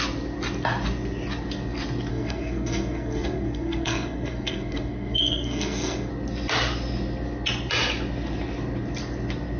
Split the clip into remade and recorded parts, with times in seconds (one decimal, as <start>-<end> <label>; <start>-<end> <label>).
0.0-2.1 recorded; 2.1-6.1 remade; 6.1-9.6 recorded